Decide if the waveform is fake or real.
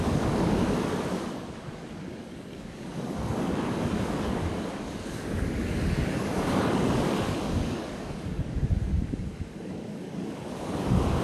fake